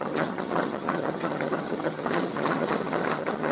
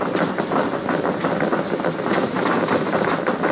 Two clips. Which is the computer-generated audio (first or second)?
first